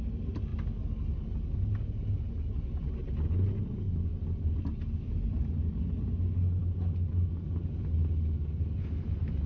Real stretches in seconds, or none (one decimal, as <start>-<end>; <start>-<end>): 0.0-4.1; 5.8-9.5